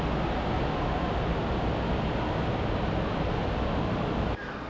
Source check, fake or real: real